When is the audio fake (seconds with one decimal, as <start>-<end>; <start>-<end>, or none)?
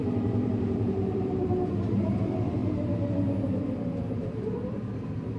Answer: 0.0-2.6; 4.0-5.4